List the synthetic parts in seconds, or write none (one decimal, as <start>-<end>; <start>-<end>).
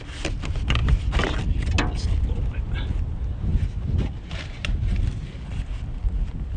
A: 3.5-5.0